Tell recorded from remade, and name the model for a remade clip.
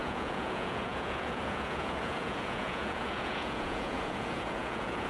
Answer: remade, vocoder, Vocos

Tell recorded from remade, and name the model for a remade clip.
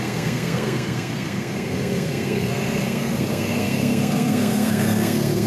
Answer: remade, codec, SNAC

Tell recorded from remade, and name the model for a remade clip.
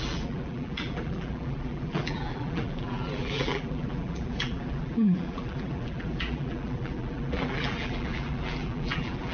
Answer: remade, vocoder, BigVGAN v2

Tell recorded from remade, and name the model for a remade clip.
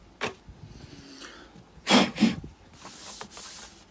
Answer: recorded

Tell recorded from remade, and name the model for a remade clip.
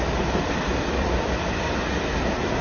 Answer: recorded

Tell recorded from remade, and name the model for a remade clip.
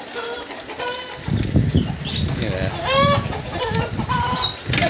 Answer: recorded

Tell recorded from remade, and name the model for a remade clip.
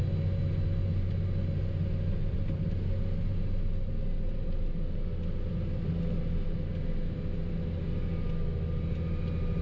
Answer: recorded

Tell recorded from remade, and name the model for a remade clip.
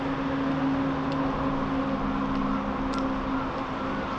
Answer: recorded